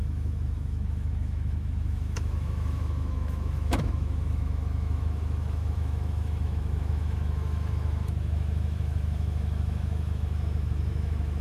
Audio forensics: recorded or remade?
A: remade